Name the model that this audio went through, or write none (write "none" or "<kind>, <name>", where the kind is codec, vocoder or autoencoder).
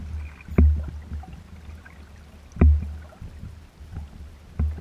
none